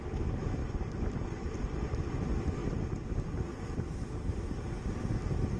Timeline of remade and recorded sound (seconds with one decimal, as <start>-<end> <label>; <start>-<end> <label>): 0.0-5.6 recorded